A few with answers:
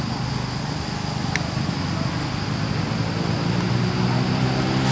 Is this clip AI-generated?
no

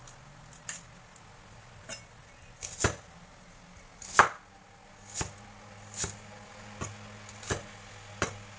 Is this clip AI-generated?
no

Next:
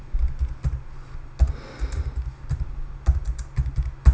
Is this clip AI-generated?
no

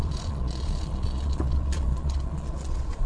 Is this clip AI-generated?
yes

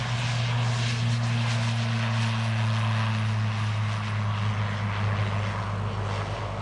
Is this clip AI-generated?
no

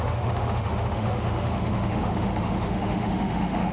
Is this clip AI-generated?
yes